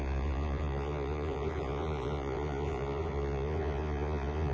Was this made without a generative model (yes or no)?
no